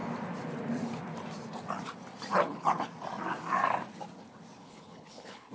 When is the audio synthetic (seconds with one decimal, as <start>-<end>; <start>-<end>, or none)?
2.3-2.9; 4.6-5.5